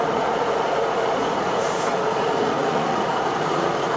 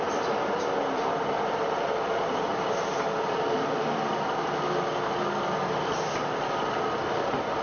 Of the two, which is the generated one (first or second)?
first